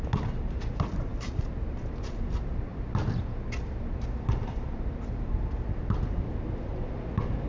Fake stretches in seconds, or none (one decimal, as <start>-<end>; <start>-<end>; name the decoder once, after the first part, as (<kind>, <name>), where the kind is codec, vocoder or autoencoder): none